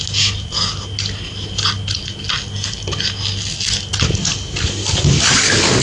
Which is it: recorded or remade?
recorded